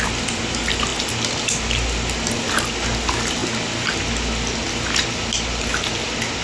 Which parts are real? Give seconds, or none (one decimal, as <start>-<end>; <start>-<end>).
0.0-6.4